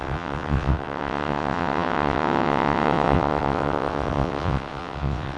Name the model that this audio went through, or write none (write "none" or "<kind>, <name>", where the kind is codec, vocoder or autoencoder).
vocoder, WaveNeXt